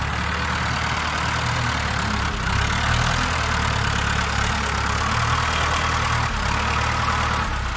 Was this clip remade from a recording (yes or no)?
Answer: no